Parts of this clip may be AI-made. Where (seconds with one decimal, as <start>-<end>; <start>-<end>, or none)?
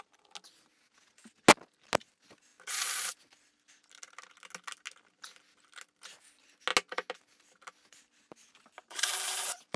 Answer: none